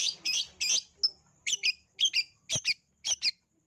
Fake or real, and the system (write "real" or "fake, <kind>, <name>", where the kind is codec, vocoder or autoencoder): real